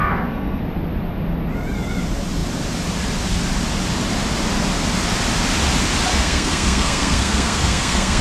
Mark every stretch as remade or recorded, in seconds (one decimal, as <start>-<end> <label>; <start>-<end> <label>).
0.0-0.6 remade; 0.6-6.1 recorded; 6.1-8.2 remade